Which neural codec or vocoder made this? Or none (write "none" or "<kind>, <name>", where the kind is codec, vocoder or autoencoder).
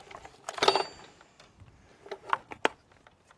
none